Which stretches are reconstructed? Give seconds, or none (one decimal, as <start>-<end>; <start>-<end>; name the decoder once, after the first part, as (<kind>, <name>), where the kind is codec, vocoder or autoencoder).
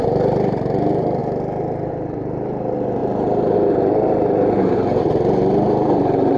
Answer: 0.0-1.2 (vocoder, BigVGAN v2); 1.9-6.4